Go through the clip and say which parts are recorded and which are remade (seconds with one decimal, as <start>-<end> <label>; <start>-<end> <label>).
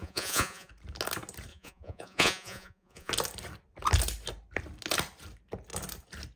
0.0-0.7 remade; 0.7-1.5 recorded; 1.5-3.1 remade; 3.1-6.4 recorded